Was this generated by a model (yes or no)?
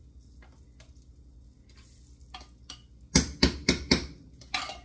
no